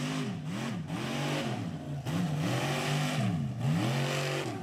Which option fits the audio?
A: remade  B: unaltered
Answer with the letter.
B